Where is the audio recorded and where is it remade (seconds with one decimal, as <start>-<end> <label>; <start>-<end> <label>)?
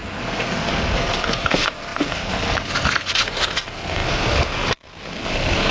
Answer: 0.0-5.7 remade